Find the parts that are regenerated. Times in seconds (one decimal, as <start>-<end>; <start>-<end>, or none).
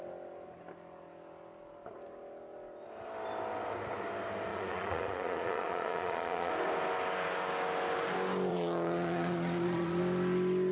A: 4.5-6.5; 8.5-10.0